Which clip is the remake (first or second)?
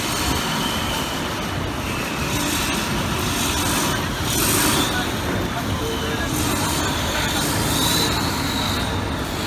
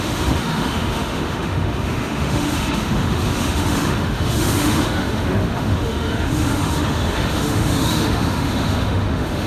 second